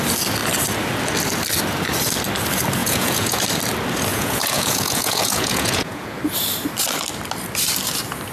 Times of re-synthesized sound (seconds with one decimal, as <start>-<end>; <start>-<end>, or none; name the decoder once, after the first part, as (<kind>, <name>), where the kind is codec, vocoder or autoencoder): 2.8-3.4 (vocoder, Vocos); 4.1-6.2